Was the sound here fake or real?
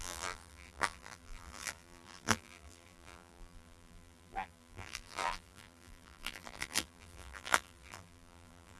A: fake